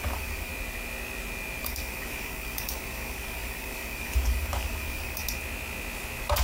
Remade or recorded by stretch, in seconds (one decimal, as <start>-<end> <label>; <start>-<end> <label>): 0.0-0.5 remade; 0.5-1.6 recorded; 1.6-5.2 remade; 5.2-6.4 recorded

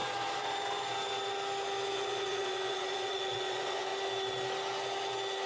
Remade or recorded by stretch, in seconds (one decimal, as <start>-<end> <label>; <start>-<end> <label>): 0.0-2.0 recorded; 2.0-3.9 remade; 3.9-5.5 recorded

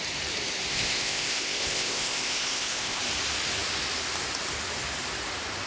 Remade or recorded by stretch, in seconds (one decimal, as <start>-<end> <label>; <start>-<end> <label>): 0.0-0.7 recorded; 0.7-3.0 remade; 3.0-5.7 recorded

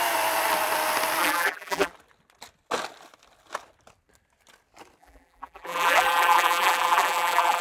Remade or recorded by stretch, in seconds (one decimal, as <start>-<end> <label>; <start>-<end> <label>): 0.0-1.2 recorded; 1.2-1.9 remade; 1.9-5.0 recorded; 5.0-7.6 remade

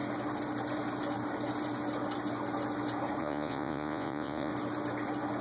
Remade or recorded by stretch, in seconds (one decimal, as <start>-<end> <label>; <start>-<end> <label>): 0.0-3.2 recorded; 3.2-4.5 remade; 4.5-5.4 recorded

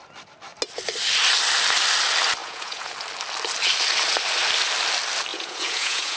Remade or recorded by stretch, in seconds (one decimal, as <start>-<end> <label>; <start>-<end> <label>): 0.0-2.4 recorded; 2.4-2.9 remade; 2.9-5.3 recorded; 5.3-6.2 remade

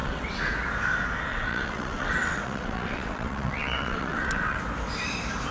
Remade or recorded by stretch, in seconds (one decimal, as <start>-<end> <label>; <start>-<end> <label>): 0.0-0.5 remade; 0.5-1.3 recorded; 1.3-4.6 remade; 4.6-5.5 recorded

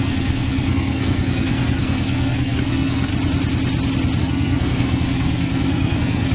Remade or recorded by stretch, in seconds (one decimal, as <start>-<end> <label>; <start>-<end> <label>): 0.0-3.1 remade; 3.1-4.2 recorded; 4.2-6.3 remade